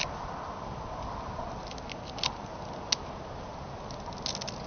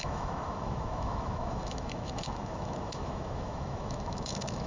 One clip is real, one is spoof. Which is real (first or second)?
first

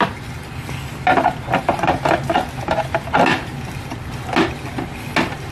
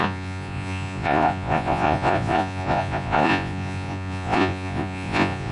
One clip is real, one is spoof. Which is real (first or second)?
first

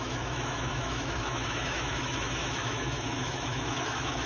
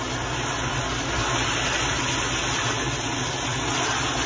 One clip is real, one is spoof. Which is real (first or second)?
second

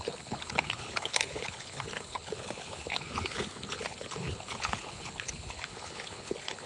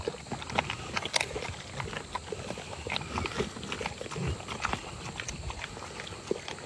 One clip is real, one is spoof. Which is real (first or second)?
second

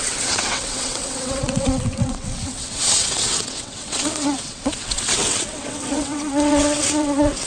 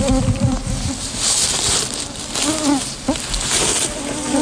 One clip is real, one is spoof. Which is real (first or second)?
second